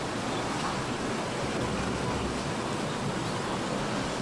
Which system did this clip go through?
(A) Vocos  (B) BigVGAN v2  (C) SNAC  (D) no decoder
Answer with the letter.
D